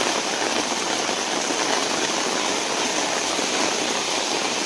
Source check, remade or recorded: recorded